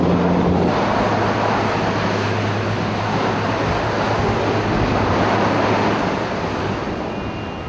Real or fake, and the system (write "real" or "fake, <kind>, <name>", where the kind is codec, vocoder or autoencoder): real